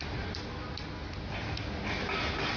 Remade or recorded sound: recorded